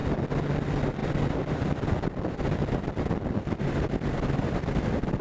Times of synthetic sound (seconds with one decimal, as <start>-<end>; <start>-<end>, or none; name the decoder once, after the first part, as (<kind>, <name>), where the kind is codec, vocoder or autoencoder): 0.6-5.2 (vocoder, BigVGAN v2)